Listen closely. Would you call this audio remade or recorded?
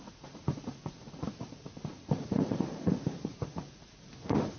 remade